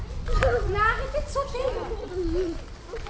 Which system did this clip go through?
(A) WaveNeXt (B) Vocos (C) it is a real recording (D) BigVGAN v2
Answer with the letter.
C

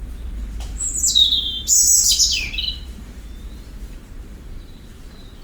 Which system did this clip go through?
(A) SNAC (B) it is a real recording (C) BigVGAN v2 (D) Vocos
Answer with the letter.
C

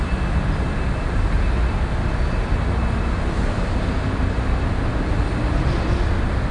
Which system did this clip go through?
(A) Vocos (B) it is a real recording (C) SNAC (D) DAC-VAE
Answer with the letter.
B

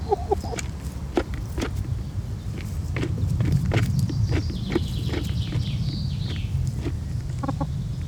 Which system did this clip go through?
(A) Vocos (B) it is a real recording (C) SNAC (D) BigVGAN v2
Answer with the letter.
D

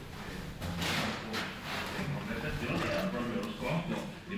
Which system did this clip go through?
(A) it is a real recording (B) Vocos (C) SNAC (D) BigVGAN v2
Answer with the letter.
A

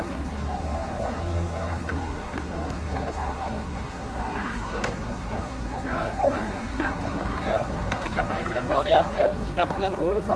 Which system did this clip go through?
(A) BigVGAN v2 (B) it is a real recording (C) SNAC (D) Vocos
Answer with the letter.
C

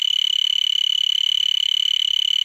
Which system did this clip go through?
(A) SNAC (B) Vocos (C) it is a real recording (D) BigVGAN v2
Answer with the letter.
C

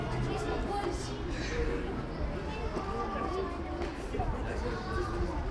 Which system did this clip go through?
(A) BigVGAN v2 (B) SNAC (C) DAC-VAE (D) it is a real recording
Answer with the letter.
D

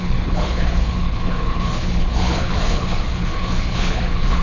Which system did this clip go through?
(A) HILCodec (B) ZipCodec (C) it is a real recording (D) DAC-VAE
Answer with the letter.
A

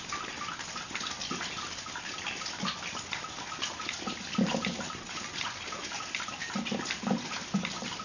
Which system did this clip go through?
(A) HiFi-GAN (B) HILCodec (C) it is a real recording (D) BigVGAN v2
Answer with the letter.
C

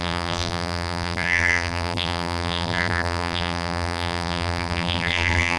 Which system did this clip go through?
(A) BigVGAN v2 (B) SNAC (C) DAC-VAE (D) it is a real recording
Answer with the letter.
A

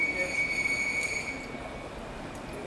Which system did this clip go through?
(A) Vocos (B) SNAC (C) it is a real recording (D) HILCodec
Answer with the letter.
C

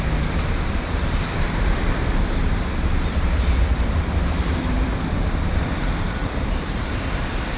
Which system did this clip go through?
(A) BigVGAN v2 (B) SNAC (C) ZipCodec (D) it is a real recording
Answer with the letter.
A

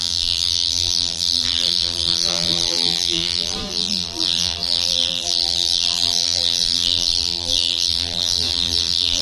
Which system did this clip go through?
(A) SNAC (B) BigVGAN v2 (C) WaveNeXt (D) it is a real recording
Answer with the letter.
B